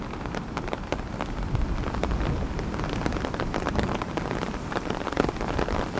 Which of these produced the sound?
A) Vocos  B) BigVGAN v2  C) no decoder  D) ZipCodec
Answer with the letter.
B